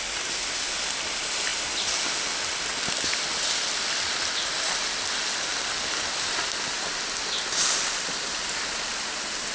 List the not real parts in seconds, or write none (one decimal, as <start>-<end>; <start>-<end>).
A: none